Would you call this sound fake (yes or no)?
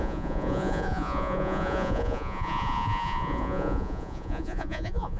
yes